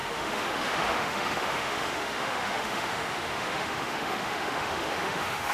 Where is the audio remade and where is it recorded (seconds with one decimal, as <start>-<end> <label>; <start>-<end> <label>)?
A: 0.0-5.5 remade